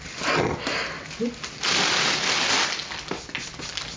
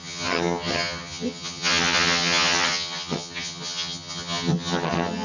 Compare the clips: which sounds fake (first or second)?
second